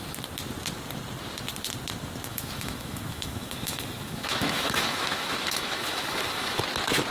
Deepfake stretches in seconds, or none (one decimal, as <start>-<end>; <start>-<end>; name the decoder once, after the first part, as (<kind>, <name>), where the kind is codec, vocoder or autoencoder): 2.3-6.6 (autoencoder, DAC-VAE)